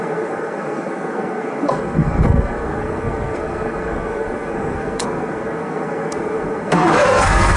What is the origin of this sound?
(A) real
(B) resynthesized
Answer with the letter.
B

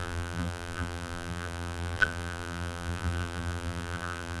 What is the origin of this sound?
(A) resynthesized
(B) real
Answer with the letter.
A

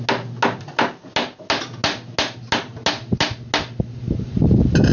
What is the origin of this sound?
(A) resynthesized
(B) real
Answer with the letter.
B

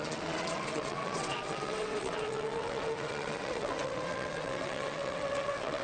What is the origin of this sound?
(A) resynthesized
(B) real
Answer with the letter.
A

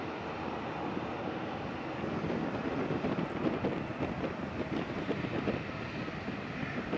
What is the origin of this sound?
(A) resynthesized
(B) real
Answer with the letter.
B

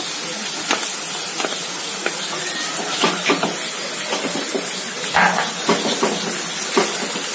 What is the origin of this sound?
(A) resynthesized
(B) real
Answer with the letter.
B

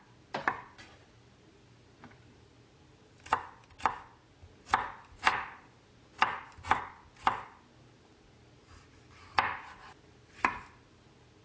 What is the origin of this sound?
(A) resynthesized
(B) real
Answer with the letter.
B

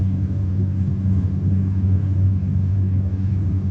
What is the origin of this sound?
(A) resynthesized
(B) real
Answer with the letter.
A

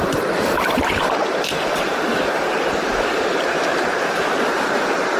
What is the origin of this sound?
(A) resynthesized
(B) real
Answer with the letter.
A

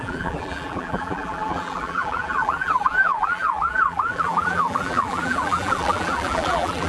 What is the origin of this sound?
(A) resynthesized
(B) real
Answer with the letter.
A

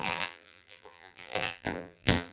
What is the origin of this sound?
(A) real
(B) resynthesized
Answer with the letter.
B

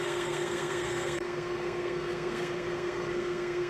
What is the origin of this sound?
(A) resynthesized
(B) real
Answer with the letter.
A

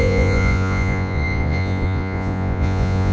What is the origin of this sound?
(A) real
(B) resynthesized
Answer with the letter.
B